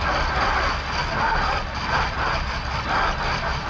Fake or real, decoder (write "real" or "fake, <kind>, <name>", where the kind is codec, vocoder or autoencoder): real